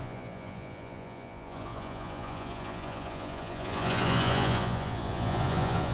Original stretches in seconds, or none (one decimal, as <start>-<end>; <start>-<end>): none